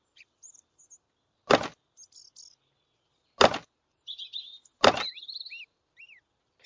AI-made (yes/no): no